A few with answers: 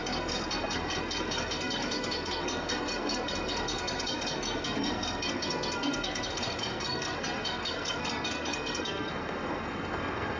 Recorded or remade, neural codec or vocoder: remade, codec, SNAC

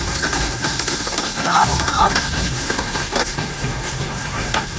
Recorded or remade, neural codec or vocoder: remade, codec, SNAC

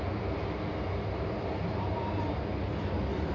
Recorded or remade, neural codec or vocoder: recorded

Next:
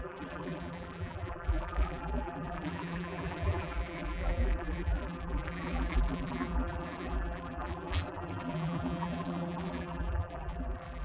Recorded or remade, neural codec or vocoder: remade, vocoder, BigVGAN v2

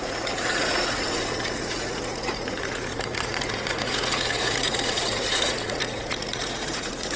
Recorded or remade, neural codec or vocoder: remade, vocoder, Vocos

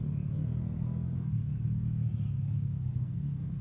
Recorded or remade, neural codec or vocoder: remade, codec, SNAC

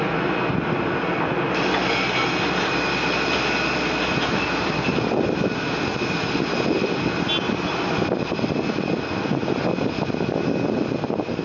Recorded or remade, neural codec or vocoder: recorded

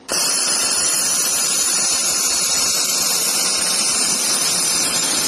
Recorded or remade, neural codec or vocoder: remade, vocoder, BigVGAN v2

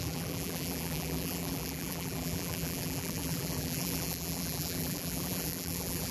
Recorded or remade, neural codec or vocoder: remade, vocoder, BigVGAN v2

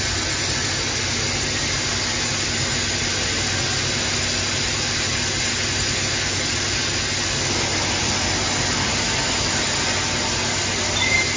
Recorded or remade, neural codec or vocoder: recorded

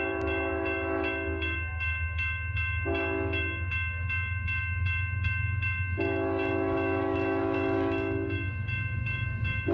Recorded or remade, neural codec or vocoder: remade, codec, DAC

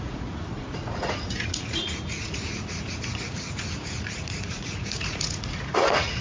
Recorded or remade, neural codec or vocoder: remade, vocoder, Vocos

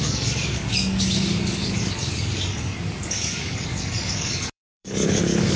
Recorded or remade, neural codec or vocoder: remade, codec, DAC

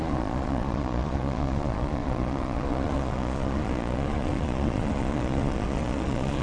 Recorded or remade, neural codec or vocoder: remade, vocoder, Vocos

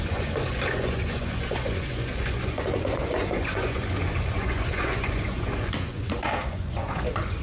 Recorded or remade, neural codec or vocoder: remade, vocoder, Vocos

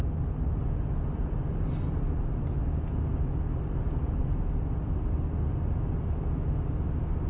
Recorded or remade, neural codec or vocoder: recorded